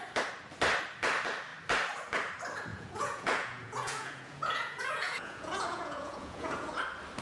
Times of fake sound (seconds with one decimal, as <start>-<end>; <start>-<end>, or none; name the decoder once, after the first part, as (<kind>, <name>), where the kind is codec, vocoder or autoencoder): 2.7-6.7 (vocoder, Vocos)

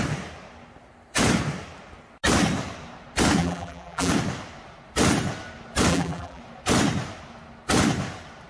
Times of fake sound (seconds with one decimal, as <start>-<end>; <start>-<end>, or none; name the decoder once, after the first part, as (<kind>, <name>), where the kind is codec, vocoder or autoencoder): 3.4-4.1 (vocoder, BigVGAN v2); 5.9-6.4

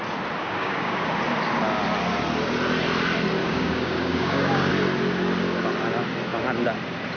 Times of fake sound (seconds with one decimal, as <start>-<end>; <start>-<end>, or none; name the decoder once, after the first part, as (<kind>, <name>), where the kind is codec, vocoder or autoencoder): 0.4-1.1 (codec, DAC); 3.4-4.7